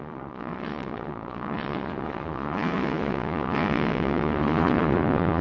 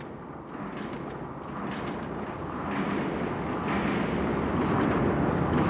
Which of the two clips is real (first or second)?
second